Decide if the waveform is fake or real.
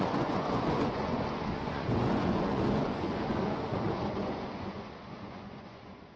fake